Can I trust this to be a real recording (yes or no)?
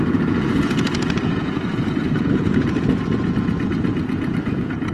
no